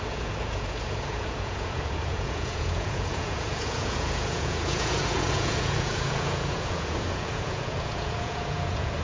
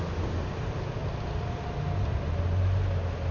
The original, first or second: second